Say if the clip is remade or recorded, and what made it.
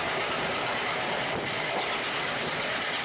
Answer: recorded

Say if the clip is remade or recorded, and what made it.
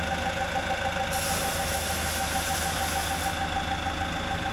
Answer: recorded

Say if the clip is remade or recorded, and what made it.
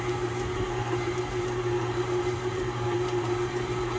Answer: remade, vocoder, BigVGAN v2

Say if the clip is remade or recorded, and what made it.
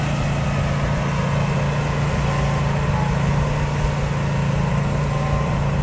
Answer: recorded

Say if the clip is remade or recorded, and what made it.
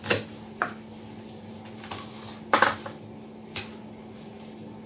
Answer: recorded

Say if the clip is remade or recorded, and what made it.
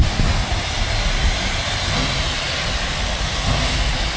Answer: recorded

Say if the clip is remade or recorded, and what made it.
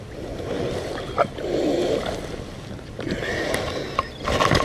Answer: recorded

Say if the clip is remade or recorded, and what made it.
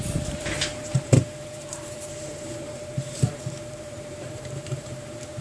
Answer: remade, vocoder, BigVGAN v2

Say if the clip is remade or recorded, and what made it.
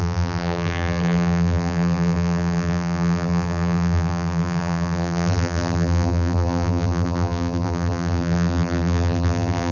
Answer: remade, vocoder, BigVGAN v2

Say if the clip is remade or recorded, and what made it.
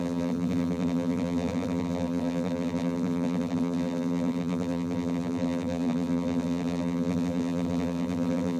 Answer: remade, vocoder, BigVGAN v2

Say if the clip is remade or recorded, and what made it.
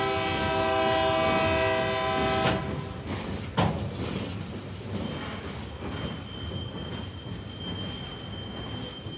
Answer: recorded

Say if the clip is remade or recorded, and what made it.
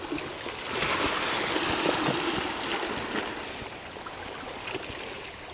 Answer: recorded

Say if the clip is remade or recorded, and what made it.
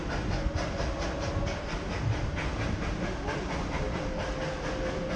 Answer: recorded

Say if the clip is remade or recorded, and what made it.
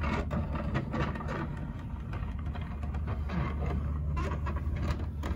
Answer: recorded